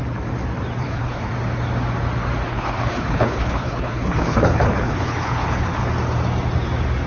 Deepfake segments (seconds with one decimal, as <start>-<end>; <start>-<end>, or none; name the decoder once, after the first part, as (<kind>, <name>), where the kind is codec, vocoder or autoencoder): 0.8-1.3 (codec, HILCodec); 2.5-5.8